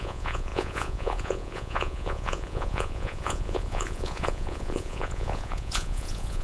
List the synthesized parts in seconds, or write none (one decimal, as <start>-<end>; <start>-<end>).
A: 0.0-6.4